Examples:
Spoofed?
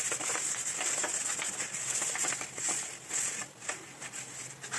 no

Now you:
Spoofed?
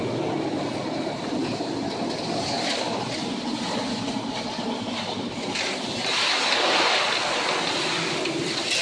no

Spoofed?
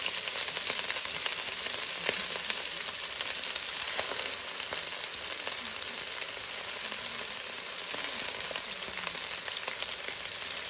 no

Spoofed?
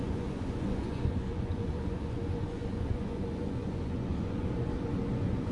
yes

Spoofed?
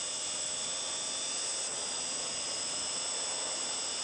no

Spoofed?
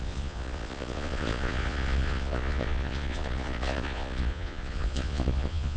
yes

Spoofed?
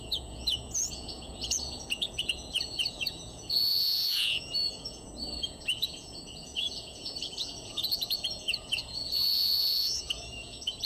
yes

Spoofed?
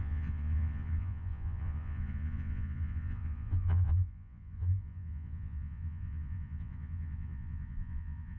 yes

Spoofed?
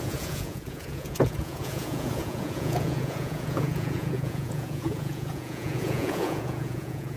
yes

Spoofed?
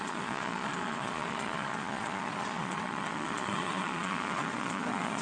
yes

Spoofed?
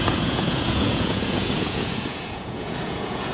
yes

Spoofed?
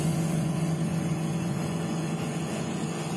yes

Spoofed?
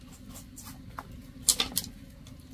no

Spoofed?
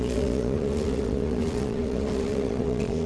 yes